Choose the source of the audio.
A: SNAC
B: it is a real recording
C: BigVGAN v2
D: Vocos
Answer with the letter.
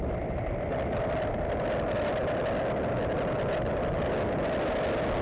B